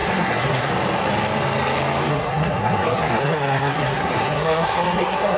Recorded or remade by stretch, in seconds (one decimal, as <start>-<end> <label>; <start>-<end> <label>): 0.0-0.7 remade; 0.7-2.1 recorded; 2.1-5.4 remade